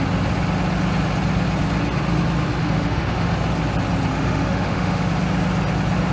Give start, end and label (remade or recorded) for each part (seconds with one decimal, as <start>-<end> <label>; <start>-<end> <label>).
0.0-2.6 recorded; 2.6-3.3 remade; 3.3-4.1 recorded; 4.1-5.1 remade; 5.1-6.1 recorded